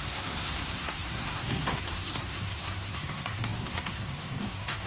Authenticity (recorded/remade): remade